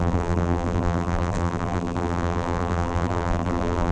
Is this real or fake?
fake